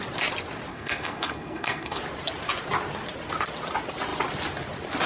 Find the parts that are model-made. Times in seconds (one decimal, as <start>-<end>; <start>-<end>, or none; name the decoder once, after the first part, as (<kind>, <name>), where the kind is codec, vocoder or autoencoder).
0.7-2.0 (codec, SNAC)